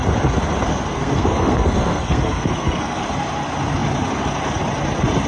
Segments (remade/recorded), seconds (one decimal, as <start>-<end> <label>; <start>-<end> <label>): 0.0-0.7 recorded; 0.7-3.0 remade; 3.0-5.3 recorded